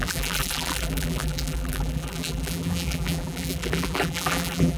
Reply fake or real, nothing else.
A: fake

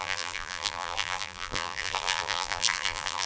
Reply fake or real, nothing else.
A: fake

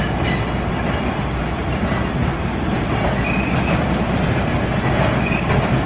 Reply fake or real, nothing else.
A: real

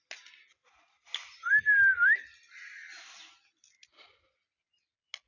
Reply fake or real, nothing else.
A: real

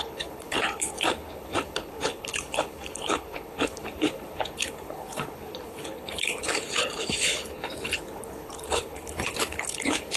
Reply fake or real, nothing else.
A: fake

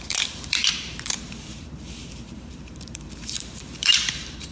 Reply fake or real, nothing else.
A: fake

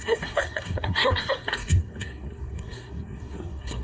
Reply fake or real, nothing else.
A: fake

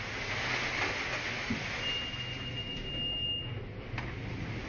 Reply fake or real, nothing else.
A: real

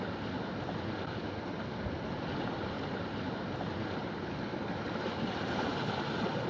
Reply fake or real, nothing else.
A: real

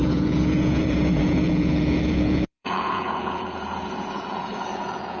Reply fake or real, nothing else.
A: fake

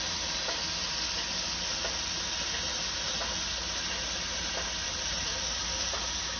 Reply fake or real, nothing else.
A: real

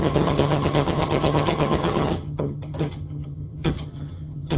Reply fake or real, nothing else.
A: fake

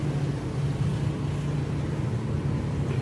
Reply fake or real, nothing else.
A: real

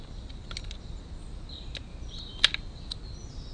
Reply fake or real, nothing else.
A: real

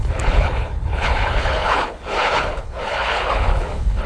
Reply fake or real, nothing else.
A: fake